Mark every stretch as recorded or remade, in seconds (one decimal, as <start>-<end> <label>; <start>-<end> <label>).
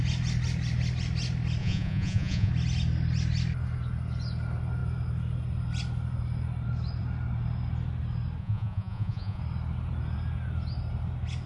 0.0-1.6 recorded; 1.6-2.5 remade; 2.5-8.4 recorded; 8.4-9.4 remade; 9.4-11.5 recorded